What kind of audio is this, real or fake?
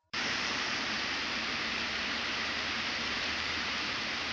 fake